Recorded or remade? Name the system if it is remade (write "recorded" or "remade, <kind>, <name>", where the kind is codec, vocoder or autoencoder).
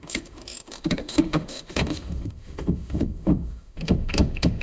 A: remade, autoencoder, DAC-VAE